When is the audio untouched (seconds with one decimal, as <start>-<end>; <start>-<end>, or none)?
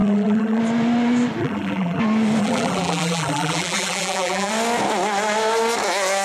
0.6-1.4; 2.0-2.4; 4.5-6.2